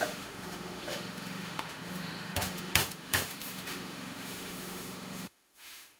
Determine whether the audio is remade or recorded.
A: remade